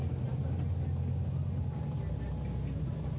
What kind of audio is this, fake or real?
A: real